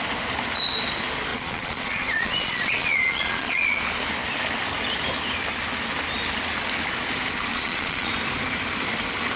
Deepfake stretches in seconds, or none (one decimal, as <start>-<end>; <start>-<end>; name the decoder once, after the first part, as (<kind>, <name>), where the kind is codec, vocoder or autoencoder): 1.3-3.8 (vocoder, Vocos); 7.5-8.1